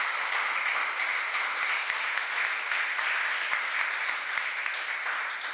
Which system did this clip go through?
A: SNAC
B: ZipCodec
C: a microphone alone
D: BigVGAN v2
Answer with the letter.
C